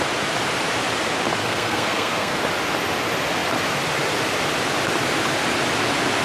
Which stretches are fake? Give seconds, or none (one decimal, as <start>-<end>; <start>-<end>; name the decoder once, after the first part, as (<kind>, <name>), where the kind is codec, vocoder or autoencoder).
1.4-2.4 (codec, SNAC)